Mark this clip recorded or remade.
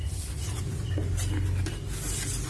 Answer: recorded